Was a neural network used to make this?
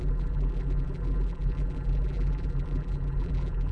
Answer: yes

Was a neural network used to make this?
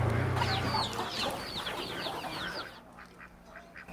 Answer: no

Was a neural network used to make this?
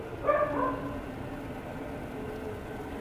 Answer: no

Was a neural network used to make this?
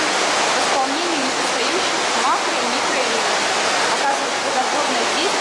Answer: no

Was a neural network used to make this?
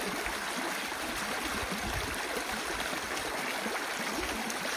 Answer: no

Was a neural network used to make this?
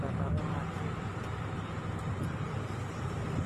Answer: yes